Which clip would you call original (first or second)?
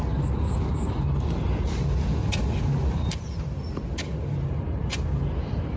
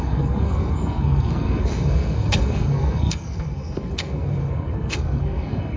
first